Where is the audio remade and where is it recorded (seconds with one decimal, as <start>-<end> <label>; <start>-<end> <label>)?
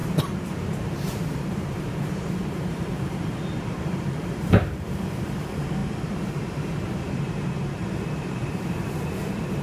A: 0.0-9.6 remade